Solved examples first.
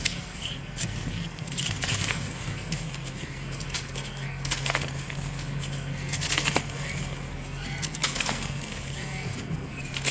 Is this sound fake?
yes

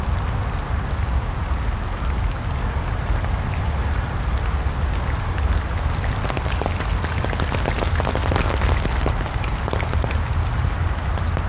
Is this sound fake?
no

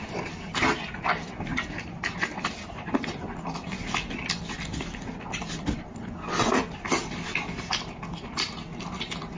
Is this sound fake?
no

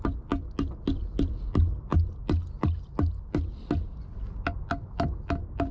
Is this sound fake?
no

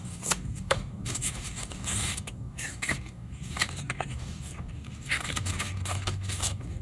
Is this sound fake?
yes